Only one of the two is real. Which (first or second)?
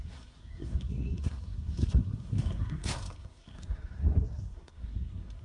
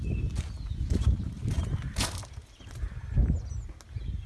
second